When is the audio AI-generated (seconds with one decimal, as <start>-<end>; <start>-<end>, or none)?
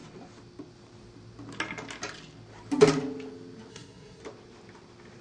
3.7-4.2